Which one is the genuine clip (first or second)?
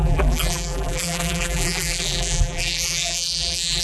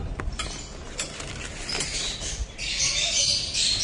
second